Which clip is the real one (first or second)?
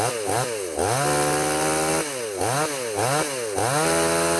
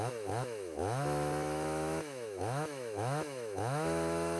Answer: first